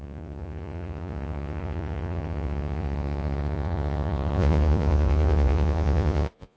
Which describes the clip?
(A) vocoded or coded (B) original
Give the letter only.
A